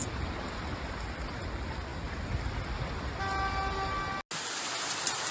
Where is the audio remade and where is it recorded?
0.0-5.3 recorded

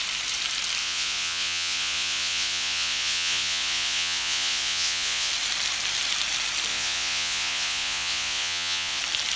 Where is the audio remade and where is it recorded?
0.0-0.8 recorded; 0.8-5.3 remade; 5.3-6.7 recorded; 6.7-9.0 remade; 9.0-9.4 recorded

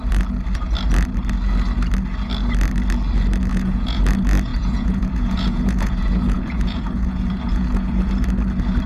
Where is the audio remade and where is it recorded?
0.0-3.5 recorded; 3.5-4.0 remade; 4.0-4.5 recorded; 4.5-8.1 remade; 8.1-8.9 recorded

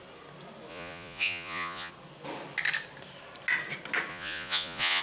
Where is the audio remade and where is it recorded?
0.0-0.7 recorded; 0.7-1.9 remade; 1.9-4.1 recorded; 4.1-5.0 remade

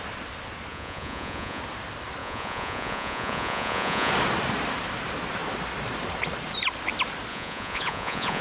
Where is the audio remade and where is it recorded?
0.0-0.7 recorded; 0.7-1.6 remade; 1.6-2.2 recorded; 2.2-4.1 remade; 4.1-7.3 recorded; 7.3-8.4 remade

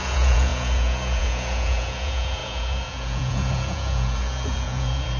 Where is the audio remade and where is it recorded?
0.0-5.2 remade

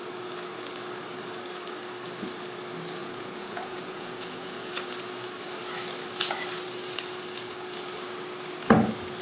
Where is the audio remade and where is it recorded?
0.0-3.0 recorded; 3.0-4.7 remade; 4.7-9.2 recorded

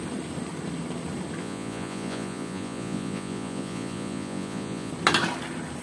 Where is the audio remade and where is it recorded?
0.0-1.4 recorded; 1.4-4.9 remade; 4.9-5.8 recorded